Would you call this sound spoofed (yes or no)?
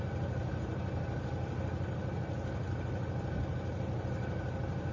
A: no